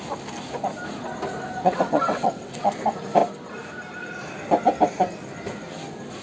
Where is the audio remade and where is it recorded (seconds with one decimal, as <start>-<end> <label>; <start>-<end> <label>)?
0.0-1.6 recorded; 1.6-2.7 remade; 2.7-6.2 recorded